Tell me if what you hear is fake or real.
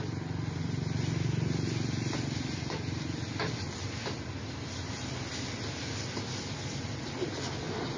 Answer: real